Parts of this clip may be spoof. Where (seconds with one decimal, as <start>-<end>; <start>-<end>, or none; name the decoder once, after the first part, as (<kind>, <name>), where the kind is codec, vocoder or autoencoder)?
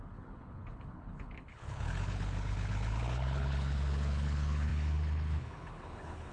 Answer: 0.0-6.3 (codec, HILCodec)